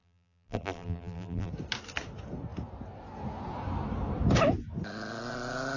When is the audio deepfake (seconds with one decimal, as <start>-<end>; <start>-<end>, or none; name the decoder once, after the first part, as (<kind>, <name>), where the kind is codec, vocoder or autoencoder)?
0.0-1.5 (vocoder, BigVGAN v2)